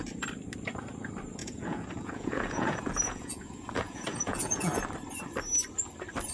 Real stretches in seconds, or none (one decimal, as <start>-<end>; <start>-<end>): 0.0-1.4; 4.8-6.3